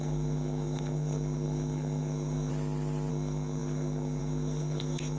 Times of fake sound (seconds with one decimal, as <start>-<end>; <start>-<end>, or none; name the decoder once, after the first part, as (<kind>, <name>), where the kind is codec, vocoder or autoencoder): 0.0-2.5 (codec, SNAC); 3.1-5.2